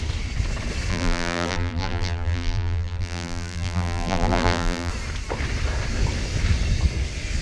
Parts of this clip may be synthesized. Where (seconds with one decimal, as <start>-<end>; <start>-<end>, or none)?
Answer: 0.9-4.9